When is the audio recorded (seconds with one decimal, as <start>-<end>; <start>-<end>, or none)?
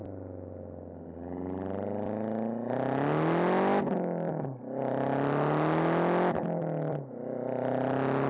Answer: 0.0-8.3